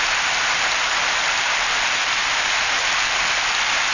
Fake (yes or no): no